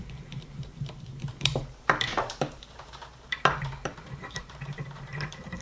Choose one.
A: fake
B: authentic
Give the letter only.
A